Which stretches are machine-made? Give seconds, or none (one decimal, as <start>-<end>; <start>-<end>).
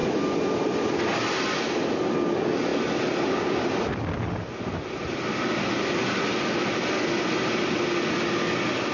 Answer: none